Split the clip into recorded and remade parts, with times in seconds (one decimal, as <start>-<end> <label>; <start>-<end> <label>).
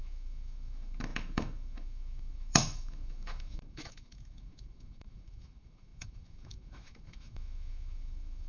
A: 0.0-8.5 remade